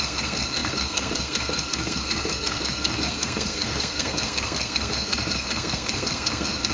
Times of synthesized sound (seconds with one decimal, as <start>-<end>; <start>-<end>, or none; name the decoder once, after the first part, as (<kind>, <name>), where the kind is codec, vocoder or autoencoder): 0.0-6.7 (codec, SNAC)